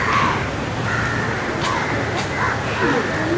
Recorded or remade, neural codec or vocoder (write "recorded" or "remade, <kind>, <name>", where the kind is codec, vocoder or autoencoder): recorded